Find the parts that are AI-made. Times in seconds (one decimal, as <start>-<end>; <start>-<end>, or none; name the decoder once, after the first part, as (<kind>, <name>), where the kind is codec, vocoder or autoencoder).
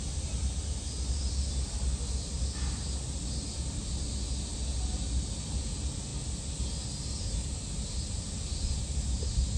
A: none